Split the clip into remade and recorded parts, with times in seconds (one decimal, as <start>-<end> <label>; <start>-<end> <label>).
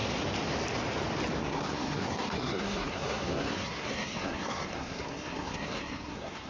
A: 0.0-1.4 recorded; 1.4-6.5 remade